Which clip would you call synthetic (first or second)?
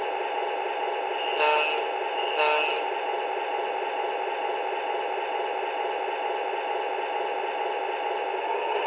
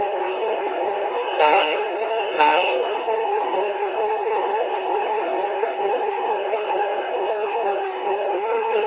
second